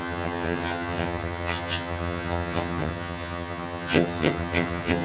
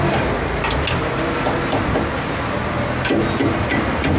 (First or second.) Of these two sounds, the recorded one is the second